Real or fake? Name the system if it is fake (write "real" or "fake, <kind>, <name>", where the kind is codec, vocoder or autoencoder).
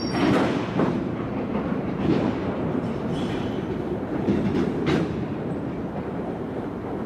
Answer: fake, vocoder, BigVGAN v2